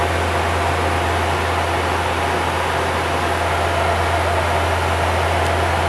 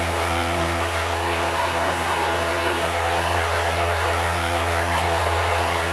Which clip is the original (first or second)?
first